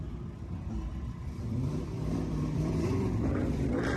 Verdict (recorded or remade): remade